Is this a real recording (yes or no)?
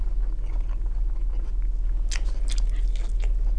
yes